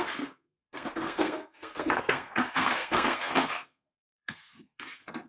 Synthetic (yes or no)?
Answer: yes